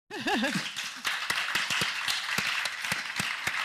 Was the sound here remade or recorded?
recorded